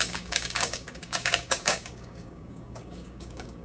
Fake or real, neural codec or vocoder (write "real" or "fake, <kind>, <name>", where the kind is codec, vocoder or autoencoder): fake, codec, DAC